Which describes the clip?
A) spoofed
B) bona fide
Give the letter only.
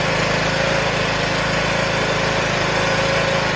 B